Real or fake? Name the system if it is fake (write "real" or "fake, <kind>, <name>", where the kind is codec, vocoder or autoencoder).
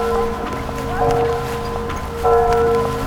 real